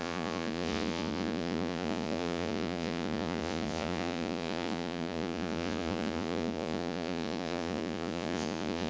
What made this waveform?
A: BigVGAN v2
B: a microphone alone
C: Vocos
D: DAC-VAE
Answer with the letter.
C